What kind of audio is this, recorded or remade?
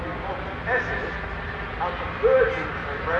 recorded